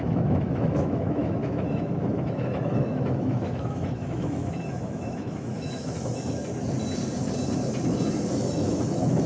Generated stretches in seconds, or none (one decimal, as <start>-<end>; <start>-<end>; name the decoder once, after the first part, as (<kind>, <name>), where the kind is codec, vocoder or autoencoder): 0.0-6.4 (autoencoder, DAC-VAE); 8.3-9.3